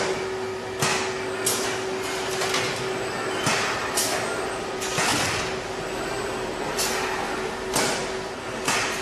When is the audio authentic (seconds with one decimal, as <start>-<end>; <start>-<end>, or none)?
0.0-9.0